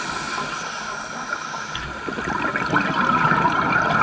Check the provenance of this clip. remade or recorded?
recorded